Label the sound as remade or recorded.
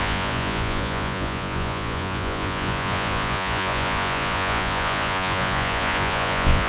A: remade